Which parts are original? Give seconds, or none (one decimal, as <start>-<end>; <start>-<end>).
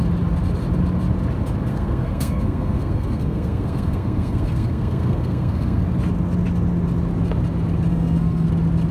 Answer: 0.0-1.7; 5.8-7.9; 8.5-8.9